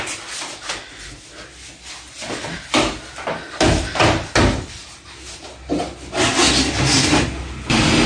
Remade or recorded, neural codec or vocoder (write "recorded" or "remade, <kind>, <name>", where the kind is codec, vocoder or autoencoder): recorded